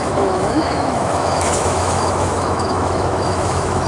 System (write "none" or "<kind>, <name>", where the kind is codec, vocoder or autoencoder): autoencoder, DAC-VAE